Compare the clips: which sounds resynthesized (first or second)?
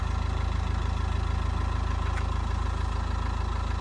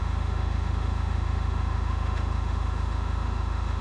second